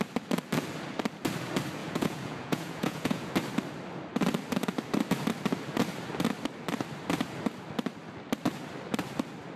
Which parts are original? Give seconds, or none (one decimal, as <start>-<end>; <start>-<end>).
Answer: 0.0-1.8; 3.3-9.6